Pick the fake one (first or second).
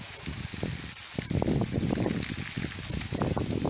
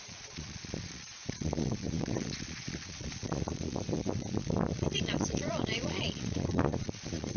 second